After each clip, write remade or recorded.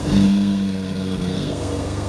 remade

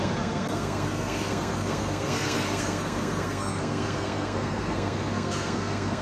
remade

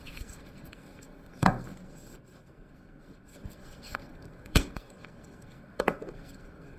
remade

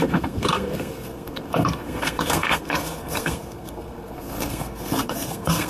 remade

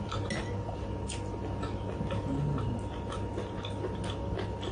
recorded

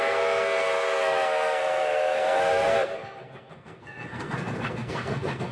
remade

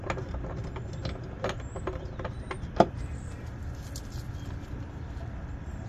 recorded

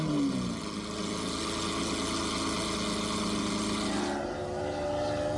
recorded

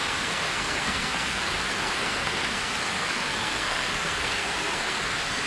remade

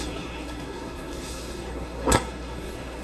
remade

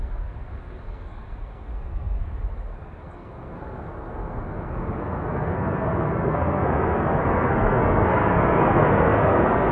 remade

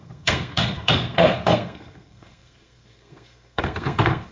remade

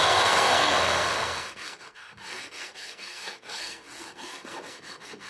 remade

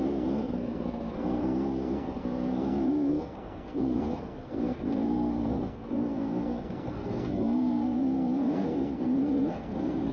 remade